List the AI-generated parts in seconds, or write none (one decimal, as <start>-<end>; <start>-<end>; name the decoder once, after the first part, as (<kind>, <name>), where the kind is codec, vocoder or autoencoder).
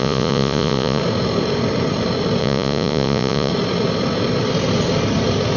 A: 0.0-1.0 (vocoder, Vocos); 2.4-3.5